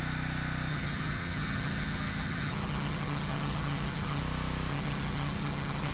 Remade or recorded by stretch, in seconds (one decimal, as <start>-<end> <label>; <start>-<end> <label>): 0.0-0.7 recorded; 0.7-4.2 remade; 4.2-4.7 recorded; 4.7-5.9 remade